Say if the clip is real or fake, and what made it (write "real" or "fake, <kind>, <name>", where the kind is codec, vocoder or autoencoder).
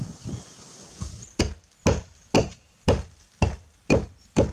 real